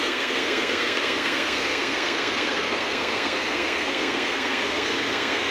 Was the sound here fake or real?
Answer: fake